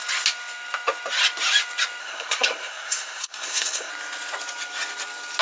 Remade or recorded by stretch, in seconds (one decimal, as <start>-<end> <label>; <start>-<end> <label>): 0.0-2.0 recorded; 2.0-3.9 remade; 3.9-5.4 recorded